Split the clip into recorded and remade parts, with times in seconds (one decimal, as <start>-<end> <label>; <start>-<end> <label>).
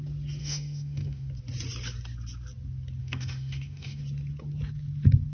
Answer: 0.0-0.4 recorded; 0.4-1.3 remade; 1.3-3.0 recorded; 3.0-4.0 remade; 4.0-5.3 recorded